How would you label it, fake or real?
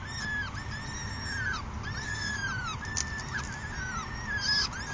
real